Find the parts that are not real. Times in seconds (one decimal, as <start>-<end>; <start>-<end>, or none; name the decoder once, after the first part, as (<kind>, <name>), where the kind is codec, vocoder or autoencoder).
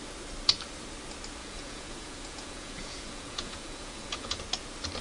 1.4-4.4 (vocoder, Vocos)